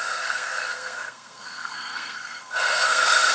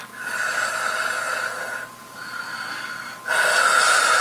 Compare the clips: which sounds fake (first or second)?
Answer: first